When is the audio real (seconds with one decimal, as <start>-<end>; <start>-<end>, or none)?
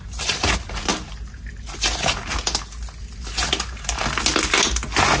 0.0-5.2